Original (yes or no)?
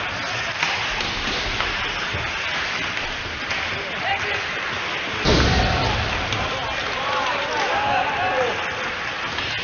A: yes